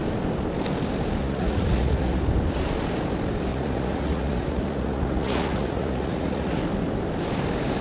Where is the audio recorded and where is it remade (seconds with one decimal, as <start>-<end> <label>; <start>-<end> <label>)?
0.0-1.2 recorded; 1.2-2.2 remade; 2.2-3.5 recorded; 3.5-6.6 remade; 6.6-7.8 recorded

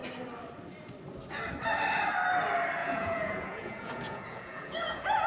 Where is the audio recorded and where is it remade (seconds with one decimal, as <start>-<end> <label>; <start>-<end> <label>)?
0.0-2.8 recorded; 2.8-5.3 remade

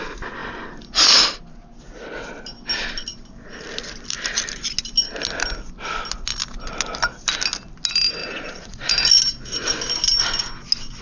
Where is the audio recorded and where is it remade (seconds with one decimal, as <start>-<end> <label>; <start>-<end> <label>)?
0.0-8.2 recorded; 8.2-8.9 remade; 8.9-11.0 recorded

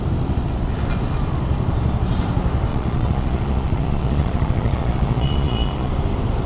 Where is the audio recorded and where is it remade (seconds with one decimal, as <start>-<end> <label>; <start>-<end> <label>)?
0.0-2.7 recorded; 2.7-5.9 remade; 5.9-6.5 recorded